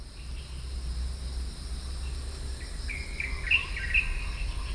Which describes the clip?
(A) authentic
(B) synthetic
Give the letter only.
A